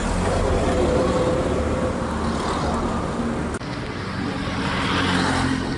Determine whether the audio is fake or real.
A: real